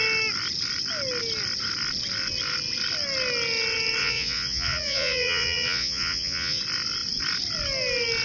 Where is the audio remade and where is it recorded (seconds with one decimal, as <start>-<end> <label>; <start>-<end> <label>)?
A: 0.0-4.0 recorded; 4.0-6.6 remade; 6.6-8.2 recorded